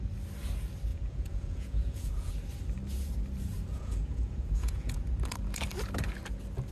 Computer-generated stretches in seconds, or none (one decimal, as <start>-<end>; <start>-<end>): 0.9-2.3; 3.7-5.0